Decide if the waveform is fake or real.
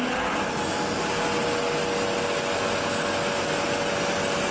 real